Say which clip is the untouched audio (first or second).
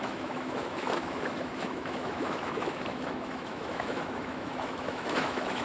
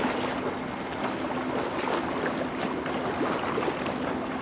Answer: second